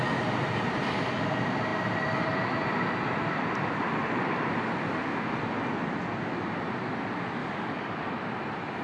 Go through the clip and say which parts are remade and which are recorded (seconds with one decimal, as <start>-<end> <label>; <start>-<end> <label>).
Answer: 0.0-7.4 recorded; 7.4-8.1 remade; 8.1-8.8 recorded